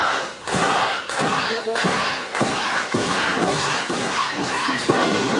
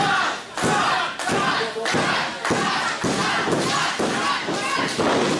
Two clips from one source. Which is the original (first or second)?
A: second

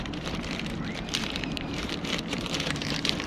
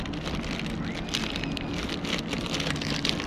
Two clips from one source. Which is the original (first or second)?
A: second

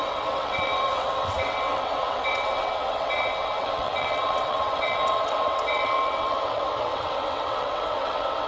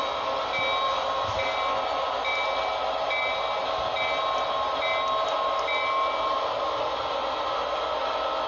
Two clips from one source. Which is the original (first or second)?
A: second